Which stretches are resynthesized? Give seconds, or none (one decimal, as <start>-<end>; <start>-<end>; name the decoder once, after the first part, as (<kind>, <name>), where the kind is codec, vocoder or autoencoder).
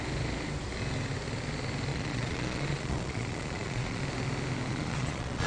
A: 1.9-4.0 (vocoder, Vocos); 4.7-5.5